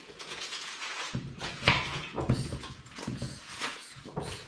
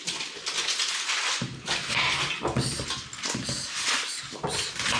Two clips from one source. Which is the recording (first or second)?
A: second